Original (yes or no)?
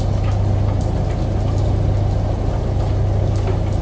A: yes